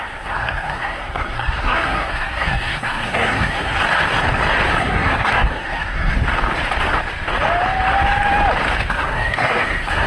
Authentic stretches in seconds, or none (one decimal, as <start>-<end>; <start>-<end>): 3.8-4.8; 6.1-8.9